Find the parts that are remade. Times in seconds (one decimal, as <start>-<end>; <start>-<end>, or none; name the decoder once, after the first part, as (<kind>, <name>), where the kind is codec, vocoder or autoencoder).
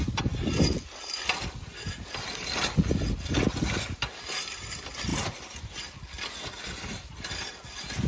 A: none